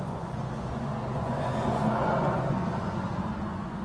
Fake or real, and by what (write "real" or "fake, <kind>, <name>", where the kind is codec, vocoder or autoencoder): fake, vocoder, Vocos